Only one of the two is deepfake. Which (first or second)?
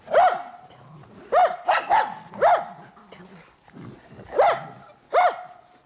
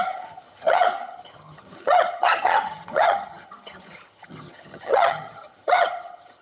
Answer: second